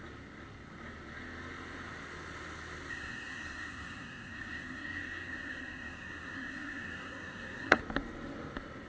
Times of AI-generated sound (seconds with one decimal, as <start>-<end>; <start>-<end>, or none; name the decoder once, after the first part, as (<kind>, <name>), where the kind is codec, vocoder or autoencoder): 2.9-7.8 (codec, SNAC)